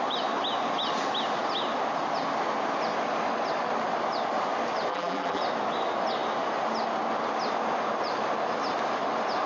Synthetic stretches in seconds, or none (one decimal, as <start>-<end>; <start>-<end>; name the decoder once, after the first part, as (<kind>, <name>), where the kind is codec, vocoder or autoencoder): 4.9-5.4 (vocoder, BigVGAN v2)